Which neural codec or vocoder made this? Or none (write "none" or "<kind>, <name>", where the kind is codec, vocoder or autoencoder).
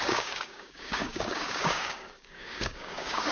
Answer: codec, DAC